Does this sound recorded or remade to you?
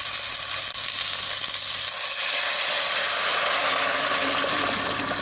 recorded